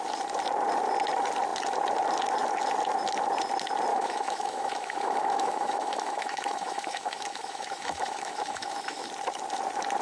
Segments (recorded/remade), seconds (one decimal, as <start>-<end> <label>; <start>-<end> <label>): 0.0-3.9 recorded; 3.9-9.1 remade; 9.1-10.0 recorded